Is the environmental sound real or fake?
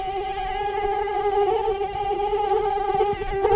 real